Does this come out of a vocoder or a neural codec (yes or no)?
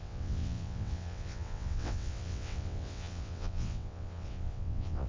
yes